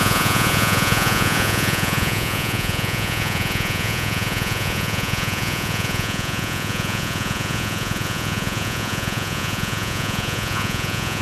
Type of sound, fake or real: fake